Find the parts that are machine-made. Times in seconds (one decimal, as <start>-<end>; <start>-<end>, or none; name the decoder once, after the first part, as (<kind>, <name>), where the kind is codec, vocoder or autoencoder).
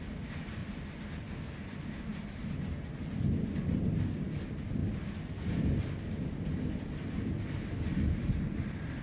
0.6-1.3 (vocoder, BigVGAN v2); 2.1-2.9